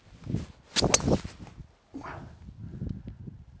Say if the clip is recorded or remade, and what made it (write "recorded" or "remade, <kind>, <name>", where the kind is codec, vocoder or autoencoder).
recorded